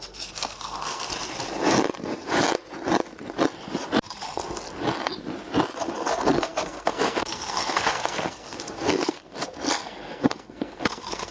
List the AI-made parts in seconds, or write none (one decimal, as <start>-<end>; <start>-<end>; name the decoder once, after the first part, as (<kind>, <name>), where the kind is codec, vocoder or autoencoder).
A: 0.0-1.1 (codec, SNAC); 5.8-11.3